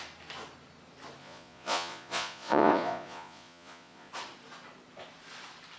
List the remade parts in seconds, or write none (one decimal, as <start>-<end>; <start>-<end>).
1.2-4.1